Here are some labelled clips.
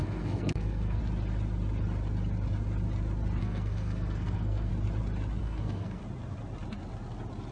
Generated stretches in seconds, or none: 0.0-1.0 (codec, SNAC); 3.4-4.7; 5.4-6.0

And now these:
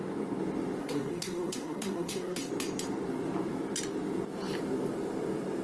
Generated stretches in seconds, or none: 0.8-2.5 (codec, SNAC)